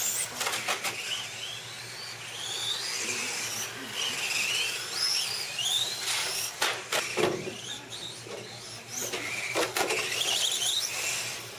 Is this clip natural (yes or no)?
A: yes